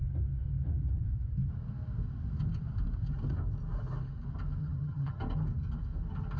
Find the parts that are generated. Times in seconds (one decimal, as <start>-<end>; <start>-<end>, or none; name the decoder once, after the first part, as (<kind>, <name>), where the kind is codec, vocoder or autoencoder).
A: 4.6-5.2 (vocoder, HiFi-GAN)